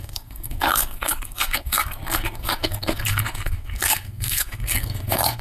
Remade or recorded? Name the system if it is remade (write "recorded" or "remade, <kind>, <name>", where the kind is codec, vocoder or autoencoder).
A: remade, codec, SNAC